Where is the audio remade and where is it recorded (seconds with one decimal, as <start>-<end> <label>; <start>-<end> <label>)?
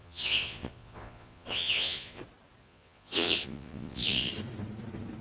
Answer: 0.0-2.2 remade; 2.2-2.6 recorded; 2.6-4.3 remade; 4.3-5.2 recorded